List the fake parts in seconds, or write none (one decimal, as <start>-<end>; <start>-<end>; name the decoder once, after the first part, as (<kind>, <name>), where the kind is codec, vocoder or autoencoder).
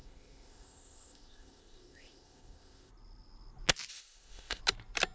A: 0.0-2.9 (codec, ZipCodec); 3.9-4.6